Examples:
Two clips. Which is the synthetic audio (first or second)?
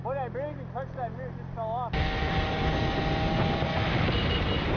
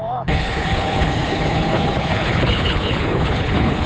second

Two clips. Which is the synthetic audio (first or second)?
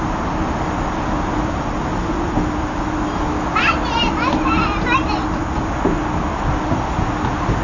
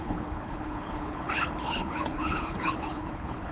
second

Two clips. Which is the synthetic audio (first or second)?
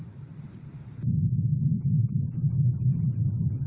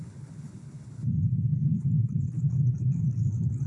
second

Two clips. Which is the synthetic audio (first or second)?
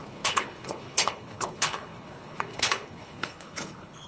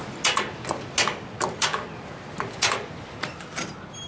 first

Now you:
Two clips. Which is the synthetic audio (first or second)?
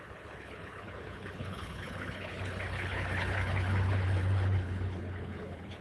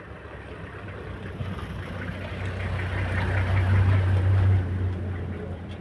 first